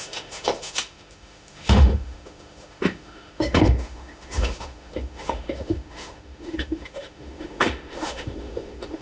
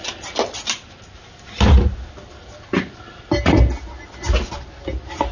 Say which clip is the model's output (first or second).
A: first